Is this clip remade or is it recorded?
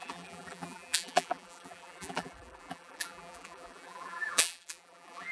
remade